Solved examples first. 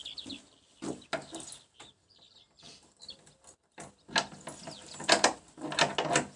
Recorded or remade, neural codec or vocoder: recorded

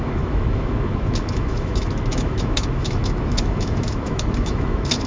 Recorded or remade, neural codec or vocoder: remade, autoencoder, DAC-VAE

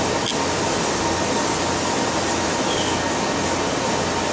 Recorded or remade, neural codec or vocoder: recorded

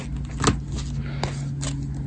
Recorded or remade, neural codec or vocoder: recorded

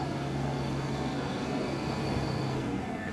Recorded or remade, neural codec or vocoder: remade, codec, SNAC